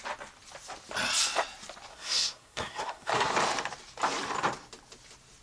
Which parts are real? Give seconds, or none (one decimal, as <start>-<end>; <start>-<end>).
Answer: 0.0-1.9; 3.3-5.4

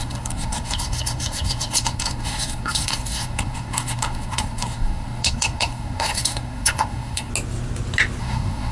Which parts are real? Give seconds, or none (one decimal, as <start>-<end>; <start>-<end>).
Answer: 7.3-8.2

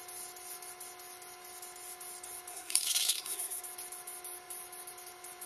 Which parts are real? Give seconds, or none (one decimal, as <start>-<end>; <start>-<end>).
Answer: 0.0-2.5; 3.6-5.5

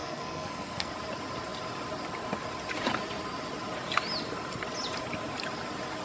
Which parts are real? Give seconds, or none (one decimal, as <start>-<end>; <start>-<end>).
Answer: 0.9-6.0

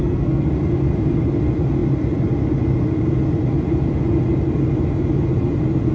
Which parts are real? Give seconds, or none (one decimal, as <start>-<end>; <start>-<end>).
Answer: 0.5-5.9